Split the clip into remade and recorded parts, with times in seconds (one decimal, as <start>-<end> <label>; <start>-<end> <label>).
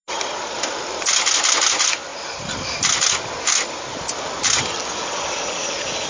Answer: 0.0-6.1 recorded